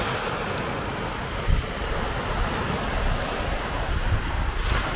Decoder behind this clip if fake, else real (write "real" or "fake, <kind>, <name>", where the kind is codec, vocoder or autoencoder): real